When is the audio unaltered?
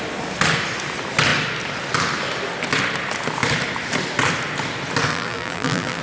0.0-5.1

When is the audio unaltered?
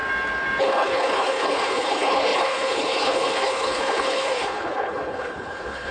0.0-0.6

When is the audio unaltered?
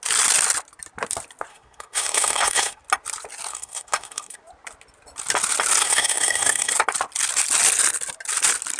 0.0-1.5; 2.8-3.5; 4.4-5.8; 6.7-8.8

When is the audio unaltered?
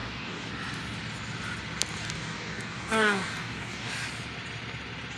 0.5-2.0; 3.9-5.2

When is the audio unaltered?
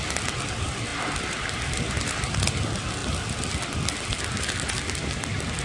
0.0-5.6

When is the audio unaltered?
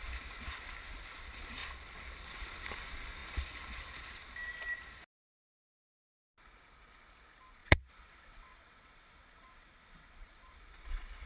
0.0-7.6; 10.6-11.3